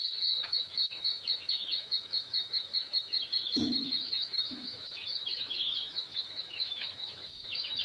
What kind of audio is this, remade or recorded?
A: remade